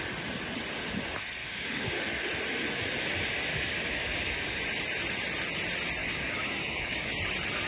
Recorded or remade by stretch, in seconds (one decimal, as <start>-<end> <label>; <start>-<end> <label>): 0.0-1.4 recorded; 1.4-2.0 remade; 2.0-3.5 recorded; 3.5-4.6 remade; 4.6-6.0 recorded; 6.0-7.1 remade; 7.1-7.7 recorded